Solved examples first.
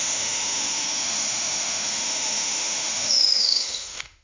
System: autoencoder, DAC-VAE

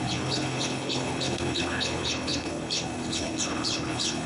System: codec, HILCodec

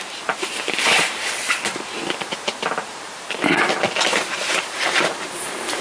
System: vocoder, BigVGAN v2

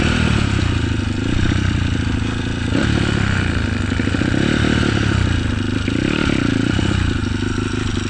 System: none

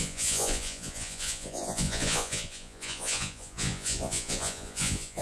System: vocoder, Vocos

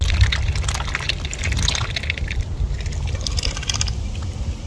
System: none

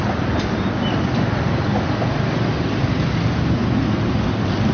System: none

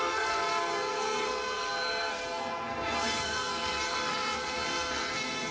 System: codec, SNAC